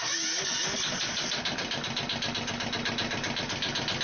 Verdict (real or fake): real